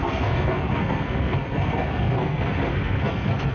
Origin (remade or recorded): remade